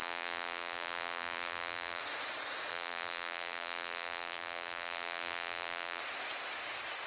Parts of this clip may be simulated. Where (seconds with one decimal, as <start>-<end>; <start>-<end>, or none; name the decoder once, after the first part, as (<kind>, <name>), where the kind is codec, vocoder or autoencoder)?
0.0-2.0 (vocoder, BigVGAN v2); 2.7-6.0